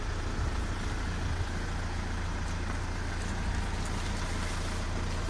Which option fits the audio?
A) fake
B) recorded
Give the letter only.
B